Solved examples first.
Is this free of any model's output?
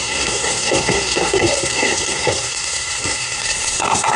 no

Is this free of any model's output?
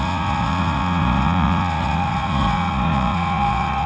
no